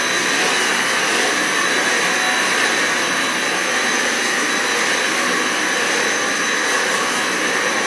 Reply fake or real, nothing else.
real